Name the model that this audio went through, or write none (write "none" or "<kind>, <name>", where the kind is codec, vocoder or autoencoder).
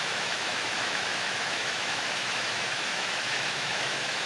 autoencoder, DAC-VAE